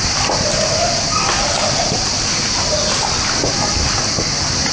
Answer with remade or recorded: recorded